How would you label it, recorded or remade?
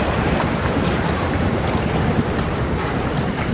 recorded